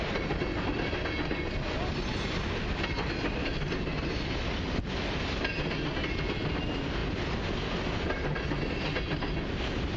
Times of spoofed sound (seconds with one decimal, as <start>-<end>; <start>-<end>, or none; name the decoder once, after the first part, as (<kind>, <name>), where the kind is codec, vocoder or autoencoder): none